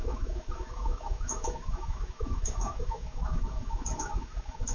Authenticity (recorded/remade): remade